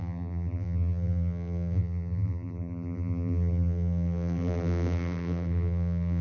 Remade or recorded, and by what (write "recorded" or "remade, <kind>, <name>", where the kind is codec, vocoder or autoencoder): remade, vocoder, BigVGAN v2